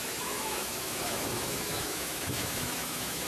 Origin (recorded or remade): remade